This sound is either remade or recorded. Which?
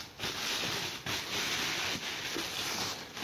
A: recorded